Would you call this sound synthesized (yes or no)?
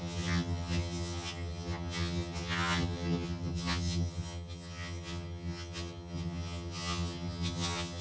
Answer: yes